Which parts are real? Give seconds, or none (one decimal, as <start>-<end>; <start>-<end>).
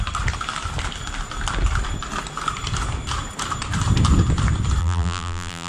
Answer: 0.0-4.8